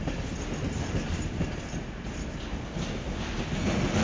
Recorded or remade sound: recorded